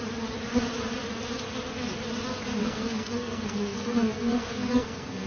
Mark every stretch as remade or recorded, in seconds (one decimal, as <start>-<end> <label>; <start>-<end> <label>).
0.0-2.6 recorded; 2.6-5.3 remade